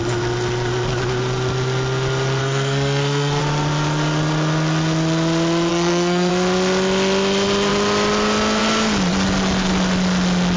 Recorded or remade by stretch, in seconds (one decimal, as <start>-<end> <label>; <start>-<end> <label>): 0.0-2.4 recorded; 2.4-3.4 remade; 3.4-5.7 recorded; 5.7-6.3 remade; 6.3-10.6 recorded

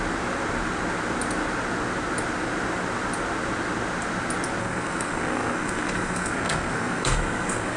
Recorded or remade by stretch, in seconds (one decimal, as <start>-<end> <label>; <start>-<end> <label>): 0.0-4.6 recorded; 4.6-7.8 remade

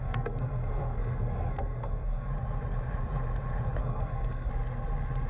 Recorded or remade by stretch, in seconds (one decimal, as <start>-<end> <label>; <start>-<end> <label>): 0.0-2.3 remade; 2.3-3.8 recorded; 3.8-4.5 remade; 4.5-5.3 recorded